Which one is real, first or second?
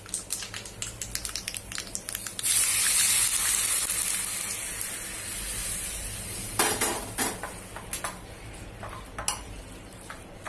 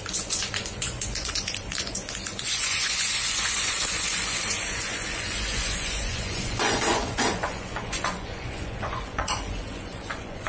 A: first